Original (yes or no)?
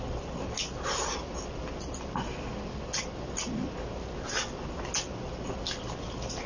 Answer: yes